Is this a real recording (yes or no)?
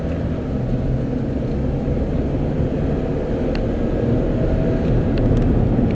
yes